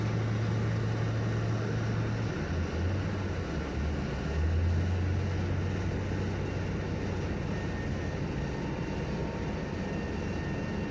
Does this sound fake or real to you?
real